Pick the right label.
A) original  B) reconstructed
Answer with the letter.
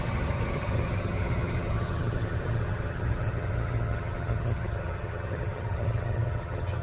B